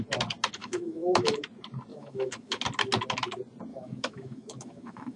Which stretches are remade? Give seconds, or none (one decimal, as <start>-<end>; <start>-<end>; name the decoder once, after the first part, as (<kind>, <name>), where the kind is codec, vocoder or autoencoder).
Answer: 0.6-1.4 (autoencoder, DAC-VAE); 1.9-2.6; 3.7-5.2